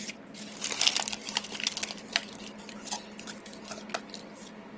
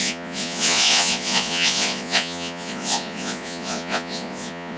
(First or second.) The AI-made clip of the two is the second